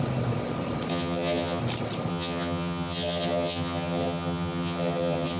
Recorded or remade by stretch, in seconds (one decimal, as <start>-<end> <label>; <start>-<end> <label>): 0.0-0.9 recorded; 0.9-1.6 remade; 1.6-2.1 recorded; 2.1-5.4 remade